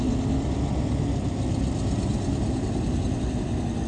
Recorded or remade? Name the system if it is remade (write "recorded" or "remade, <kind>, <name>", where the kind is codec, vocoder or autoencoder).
recorded